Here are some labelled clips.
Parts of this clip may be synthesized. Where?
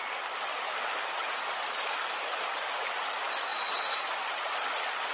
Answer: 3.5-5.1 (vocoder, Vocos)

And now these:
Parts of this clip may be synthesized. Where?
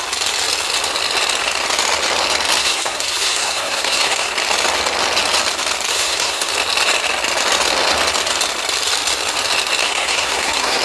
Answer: 2.6-4.3 (codec, SNAC); 5.9-6.5; 9.8-10.8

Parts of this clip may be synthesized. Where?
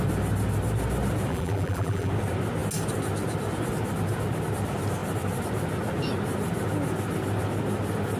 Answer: 1.3-2.1 (vocoder, BigVGAN v2)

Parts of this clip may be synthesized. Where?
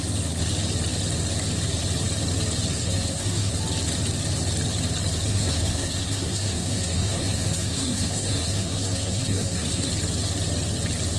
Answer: 2.8-3.5 (codec, SNAC); 5.3-9.9